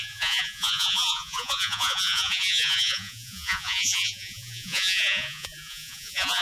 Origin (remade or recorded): remade